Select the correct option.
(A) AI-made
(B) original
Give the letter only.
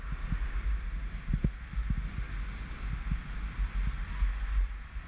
B